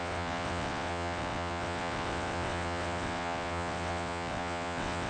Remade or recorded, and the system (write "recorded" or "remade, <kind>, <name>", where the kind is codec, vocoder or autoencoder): remade, vocoder, WaveNeXt